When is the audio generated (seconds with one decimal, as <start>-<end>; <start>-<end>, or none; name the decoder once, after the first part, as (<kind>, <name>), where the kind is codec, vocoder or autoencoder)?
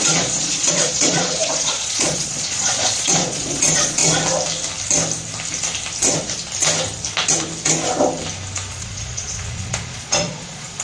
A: 0.0-4.0 (vocoder, Vocos); 8.7-10.8